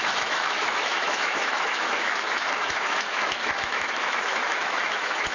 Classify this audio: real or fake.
fake